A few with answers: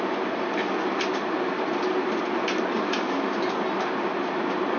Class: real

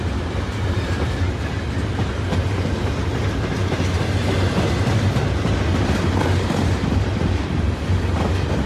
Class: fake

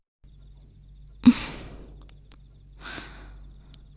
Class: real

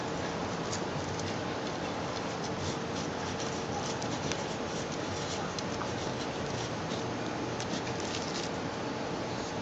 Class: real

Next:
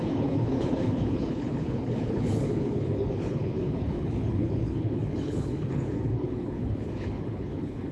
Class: fake